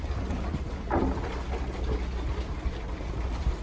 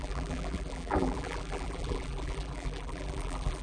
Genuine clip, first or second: first